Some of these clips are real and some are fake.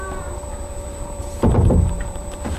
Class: fake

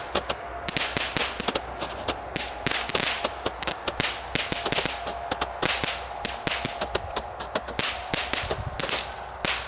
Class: real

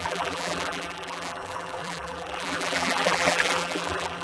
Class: fake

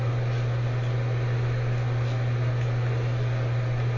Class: real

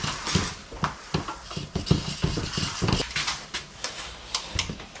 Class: real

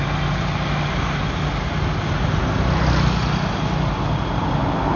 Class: real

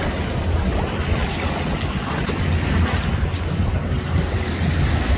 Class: real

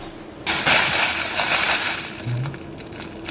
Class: real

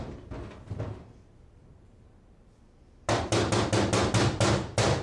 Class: real